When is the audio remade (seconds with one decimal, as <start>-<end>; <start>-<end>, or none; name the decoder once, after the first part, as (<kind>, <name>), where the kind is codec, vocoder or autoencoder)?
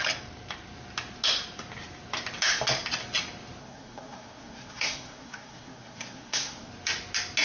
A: 3.6-6.7 (codec, SNAC)